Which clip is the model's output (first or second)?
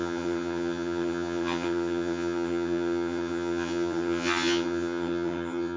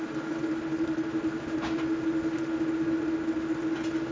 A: first